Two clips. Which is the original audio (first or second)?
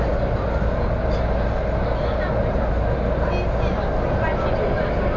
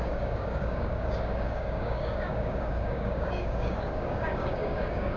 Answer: first